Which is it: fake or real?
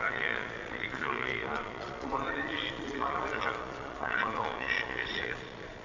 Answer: fake